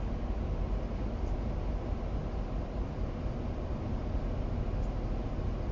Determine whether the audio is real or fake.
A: real